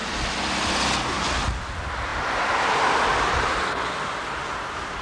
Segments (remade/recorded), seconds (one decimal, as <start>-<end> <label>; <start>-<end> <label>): 0.0-5.0 recorded